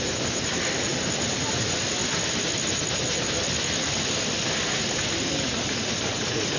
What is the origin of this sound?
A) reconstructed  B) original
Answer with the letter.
B